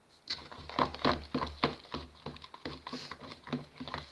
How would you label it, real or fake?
real